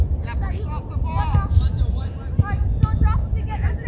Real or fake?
real